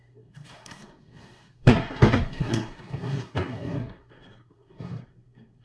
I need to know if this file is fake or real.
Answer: fake